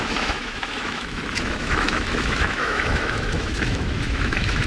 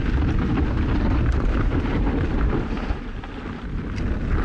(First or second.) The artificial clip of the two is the first